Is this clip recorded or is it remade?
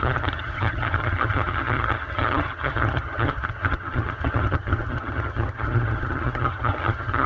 remade